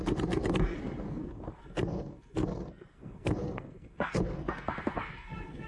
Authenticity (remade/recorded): remade